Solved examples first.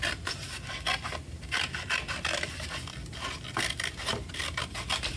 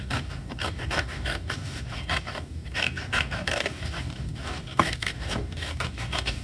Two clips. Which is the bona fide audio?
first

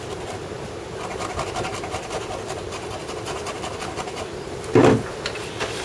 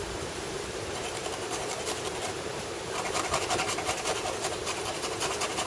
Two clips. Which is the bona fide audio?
first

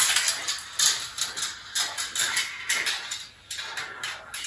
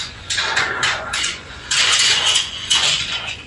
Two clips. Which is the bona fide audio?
first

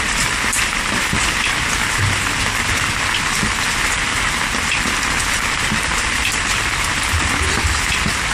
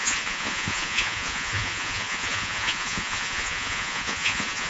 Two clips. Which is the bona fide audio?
first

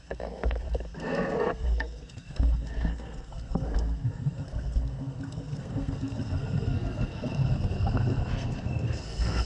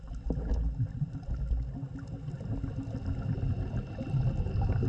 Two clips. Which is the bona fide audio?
second